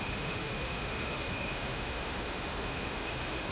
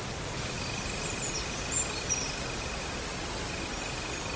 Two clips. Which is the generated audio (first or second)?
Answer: first